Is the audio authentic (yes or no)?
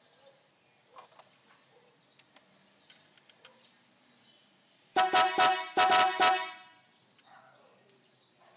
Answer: yes